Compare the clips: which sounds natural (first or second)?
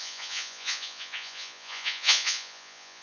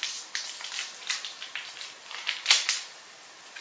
second